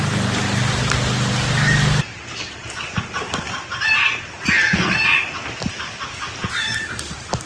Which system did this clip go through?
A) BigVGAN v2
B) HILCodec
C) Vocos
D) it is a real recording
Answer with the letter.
D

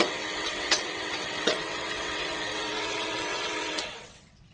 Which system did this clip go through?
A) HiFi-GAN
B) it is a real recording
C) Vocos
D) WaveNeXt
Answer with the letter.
D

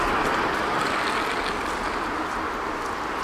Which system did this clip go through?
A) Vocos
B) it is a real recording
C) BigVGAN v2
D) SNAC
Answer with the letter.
B